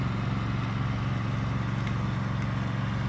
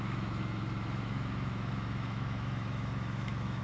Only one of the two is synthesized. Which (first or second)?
second